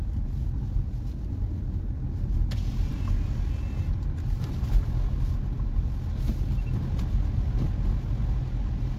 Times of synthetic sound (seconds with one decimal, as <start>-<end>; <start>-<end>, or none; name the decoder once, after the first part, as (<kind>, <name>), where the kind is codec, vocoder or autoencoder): none